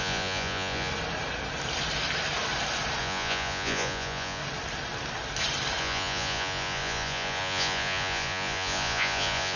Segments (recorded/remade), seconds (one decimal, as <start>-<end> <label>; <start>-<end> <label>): 0.0-0.9 remade; 0.9-3.0 recorded; 3.0-4.4 remade; 4.4-5.8 recorded; 5.8-9.6 remade